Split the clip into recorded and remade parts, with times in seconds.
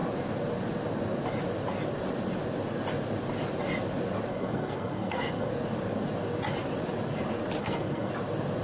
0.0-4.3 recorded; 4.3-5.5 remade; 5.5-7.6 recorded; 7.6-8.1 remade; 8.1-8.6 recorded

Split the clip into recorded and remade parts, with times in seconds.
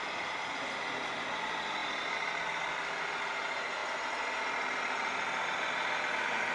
0.0-1.8 recorded; 1.8-2.4 remade; 2.4-6.5 recorded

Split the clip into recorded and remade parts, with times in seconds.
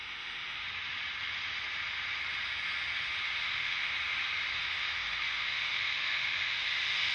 0.0-0.6 remade; 0.6-3.4 recorded; 3.4-3.9 remade; 3.9-4.6 recorded; 4.6-7.1 remade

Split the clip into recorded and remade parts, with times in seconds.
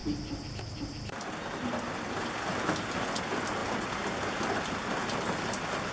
0.0-5.9 recorded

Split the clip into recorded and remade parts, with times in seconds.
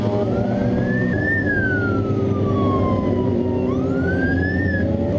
0.0-5.2 recorded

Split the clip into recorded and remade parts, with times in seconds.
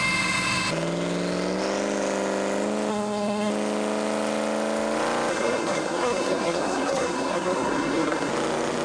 0.0-2.9 recorded; 2.9-3.5 remade; 3.5-5.3 recorded; 5.3-8.3 remade; 8.3-8.8 recorded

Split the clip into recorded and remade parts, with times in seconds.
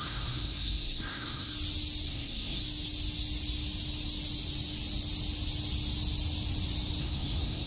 0.0-1.5 remade; 1.5-2.1 recorded; 2.1-2.6 remade; 2.6-7.0 recorded; 7.0-7.7 remade